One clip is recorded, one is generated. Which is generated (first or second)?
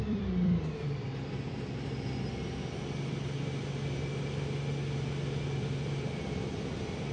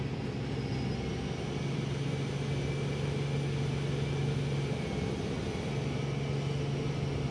first